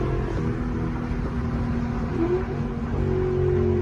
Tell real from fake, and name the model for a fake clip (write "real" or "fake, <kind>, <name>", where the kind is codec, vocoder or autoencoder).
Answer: real